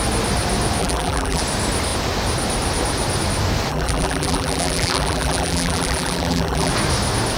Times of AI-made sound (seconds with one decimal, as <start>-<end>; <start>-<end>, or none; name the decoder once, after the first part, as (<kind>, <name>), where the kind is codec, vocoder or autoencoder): 0.8-1.4 (vocoder, BigVGAN v2); 3.7-6.7